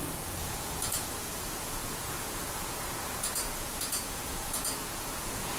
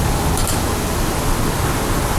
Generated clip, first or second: first